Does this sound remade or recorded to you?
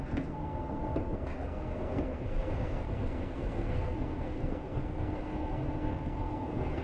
remade